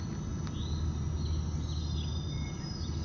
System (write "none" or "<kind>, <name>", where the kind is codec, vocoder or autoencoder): none